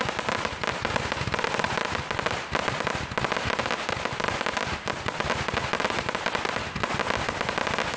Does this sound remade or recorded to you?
recorded